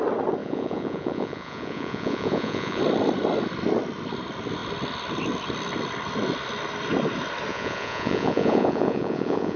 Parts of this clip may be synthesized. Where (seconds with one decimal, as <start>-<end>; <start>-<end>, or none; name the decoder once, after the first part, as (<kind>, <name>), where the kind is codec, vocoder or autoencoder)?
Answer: 0.4-2.8 (vocoder, Vocos); 7.5-9.6